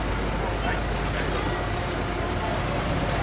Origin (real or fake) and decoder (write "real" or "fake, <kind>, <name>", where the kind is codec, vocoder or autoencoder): real